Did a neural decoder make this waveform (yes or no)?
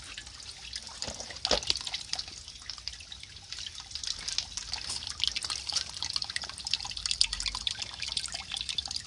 no